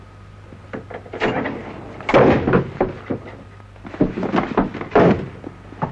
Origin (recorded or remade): recorded